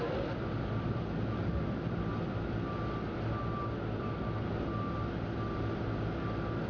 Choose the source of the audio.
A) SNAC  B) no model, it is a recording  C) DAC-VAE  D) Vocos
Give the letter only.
B